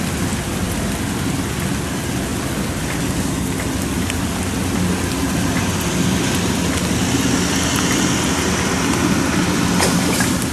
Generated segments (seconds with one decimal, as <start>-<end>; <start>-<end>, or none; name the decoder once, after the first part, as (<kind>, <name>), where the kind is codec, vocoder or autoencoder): none